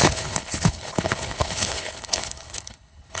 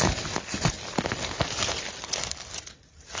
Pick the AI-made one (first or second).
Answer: first